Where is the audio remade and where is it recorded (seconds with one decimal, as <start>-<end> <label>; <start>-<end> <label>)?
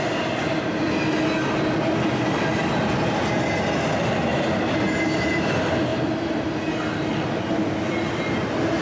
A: 0.0-8.8 recorded